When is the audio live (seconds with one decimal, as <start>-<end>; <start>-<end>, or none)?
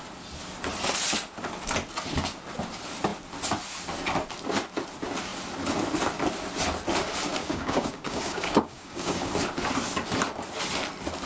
0.0-7.4; 9.3-11.3